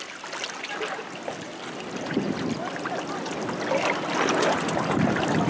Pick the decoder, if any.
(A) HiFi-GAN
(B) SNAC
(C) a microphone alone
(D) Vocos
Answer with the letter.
C